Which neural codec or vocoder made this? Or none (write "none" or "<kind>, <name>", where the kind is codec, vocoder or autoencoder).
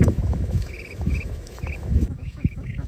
autoencoder, DAC-VAE